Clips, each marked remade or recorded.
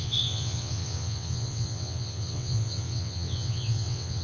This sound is remade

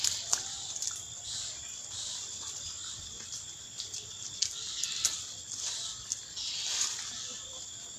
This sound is recorded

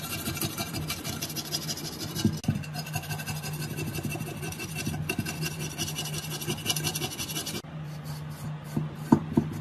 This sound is recorded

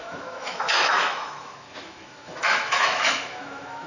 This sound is remade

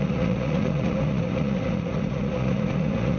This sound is remade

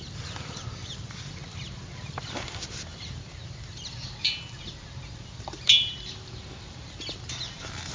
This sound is remade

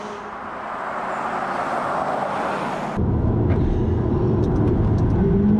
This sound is recorded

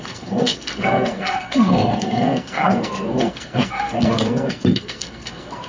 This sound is remade